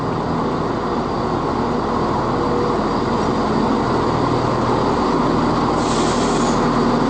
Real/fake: real